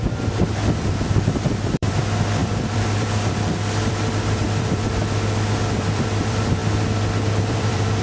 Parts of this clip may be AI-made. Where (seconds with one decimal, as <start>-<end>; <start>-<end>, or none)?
0.0-6.6; 7.5-8.0

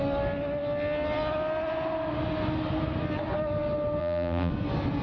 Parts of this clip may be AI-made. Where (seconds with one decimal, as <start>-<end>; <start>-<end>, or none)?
4.0-4.5

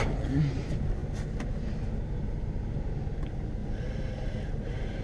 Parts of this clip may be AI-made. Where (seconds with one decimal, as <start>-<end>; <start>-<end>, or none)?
3.6-5.0

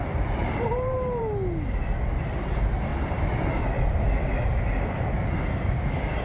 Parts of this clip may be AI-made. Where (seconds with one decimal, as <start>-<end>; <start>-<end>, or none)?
0.4-1.2